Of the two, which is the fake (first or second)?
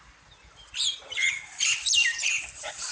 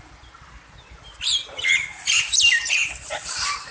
first